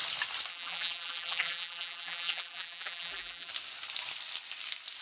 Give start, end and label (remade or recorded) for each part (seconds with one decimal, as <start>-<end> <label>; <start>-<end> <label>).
0.0-0.5 recorded; 0.5-3.5 remade; 3.5-5.0 recorded